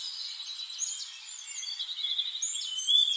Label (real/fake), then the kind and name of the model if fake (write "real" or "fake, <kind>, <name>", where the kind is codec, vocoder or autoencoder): real